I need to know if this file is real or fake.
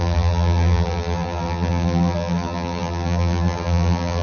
fake